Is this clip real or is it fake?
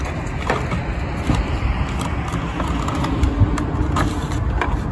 real